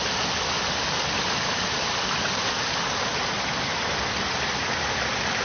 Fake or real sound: real